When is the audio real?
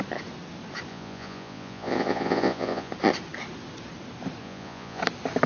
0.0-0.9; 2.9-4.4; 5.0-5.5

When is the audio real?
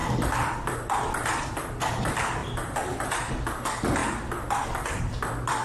0.0-2.4; 3.3-4.0; 5.0-5.6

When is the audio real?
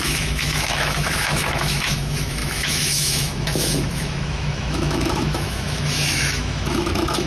none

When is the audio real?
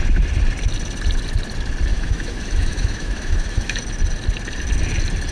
0.0-1.9; 3.8-5.3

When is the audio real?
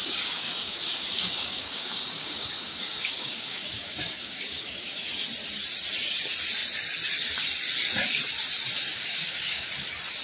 5.1-8.9; 9.7-10.2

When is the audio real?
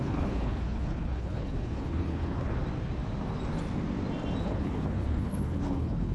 2.5-4.4